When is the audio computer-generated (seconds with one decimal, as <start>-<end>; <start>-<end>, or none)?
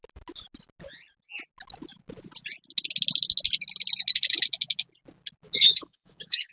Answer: 5.7-6.5